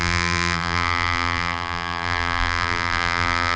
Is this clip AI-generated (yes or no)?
yes